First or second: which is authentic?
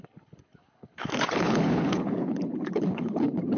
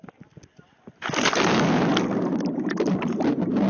second